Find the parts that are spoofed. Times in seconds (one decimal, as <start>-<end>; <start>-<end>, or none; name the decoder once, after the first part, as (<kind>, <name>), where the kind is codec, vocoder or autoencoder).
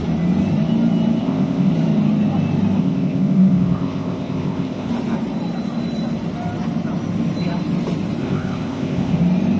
1.2-1.7 (codec, ZipCodec); 2.8-4.9; 8.2-9.2